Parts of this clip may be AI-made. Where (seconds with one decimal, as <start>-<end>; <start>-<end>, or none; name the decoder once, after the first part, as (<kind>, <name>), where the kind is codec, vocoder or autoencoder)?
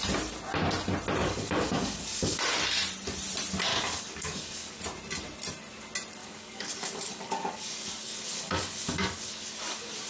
1.2-2.4 (codec, DAC); 3.7-4.8; 6.2-10.1